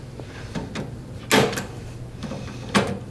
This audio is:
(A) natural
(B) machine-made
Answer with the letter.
A